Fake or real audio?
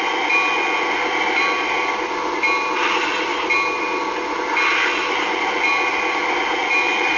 real